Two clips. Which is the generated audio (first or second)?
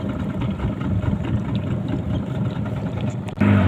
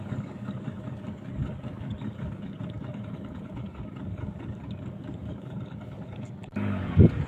second